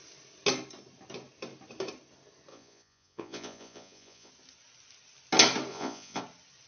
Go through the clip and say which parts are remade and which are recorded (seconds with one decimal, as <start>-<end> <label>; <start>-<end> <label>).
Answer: 0.0-2.5 recorded; 2.5-4.3 remade; 4.3-5.7 recorded; 5.7-6.2 remade; 6.2-6.7 recorded